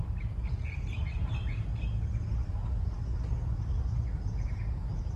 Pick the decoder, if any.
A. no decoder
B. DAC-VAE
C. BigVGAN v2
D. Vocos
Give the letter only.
A